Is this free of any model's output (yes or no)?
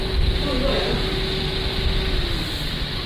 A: yes